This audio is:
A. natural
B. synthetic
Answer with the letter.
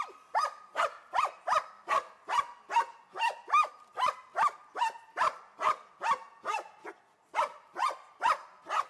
A